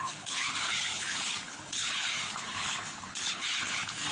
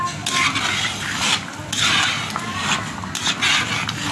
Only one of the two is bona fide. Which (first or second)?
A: second